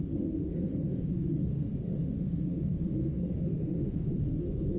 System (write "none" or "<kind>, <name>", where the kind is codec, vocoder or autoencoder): autoencoder, DAC-VAE